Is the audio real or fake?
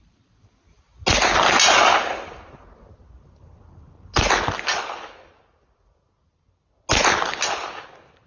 real